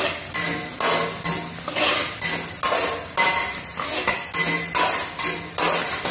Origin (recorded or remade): recorded